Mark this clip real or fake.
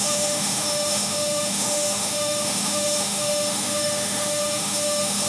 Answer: fake